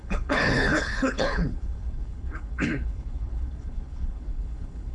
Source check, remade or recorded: remade